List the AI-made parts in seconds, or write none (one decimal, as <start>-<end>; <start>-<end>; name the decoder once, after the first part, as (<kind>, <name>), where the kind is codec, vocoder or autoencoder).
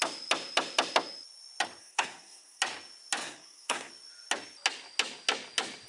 1.8-2.6 (codec, SNAC); 3.2-3.9